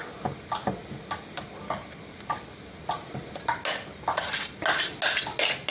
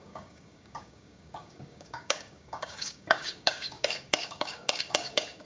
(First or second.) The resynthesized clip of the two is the second